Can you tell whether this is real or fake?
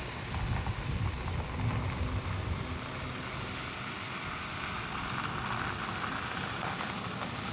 real